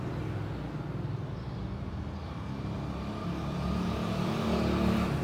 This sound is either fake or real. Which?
real